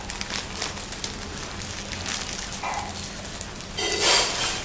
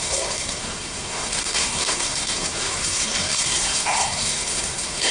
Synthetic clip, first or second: second